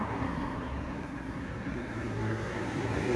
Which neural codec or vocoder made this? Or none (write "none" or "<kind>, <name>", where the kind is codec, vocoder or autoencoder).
codec, SNAC